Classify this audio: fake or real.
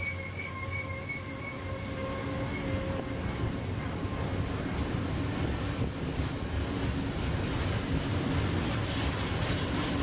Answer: real